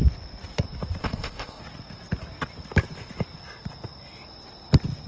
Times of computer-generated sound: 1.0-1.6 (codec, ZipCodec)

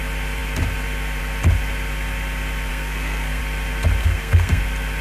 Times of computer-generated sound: 2.7-3.4 (codec, SNAC); 4.0-4.6

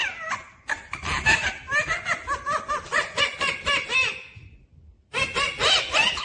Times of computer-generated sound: 2.9-3.6 (vocoder, Vocos)

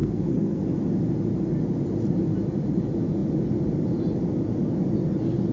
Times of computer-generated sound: 0.0-0.6 (codec, SNAC)